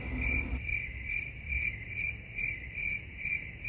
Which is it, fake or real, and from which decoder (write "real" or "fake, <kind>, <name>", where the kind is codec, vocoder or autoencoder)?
real